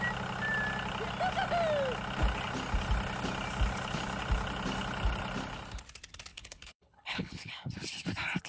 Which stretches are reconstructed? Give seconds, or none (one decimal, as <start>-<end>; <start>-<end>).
6.3-7.7